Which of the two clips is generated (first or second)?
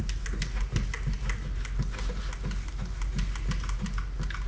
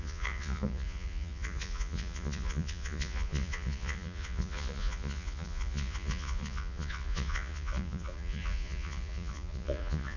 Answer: second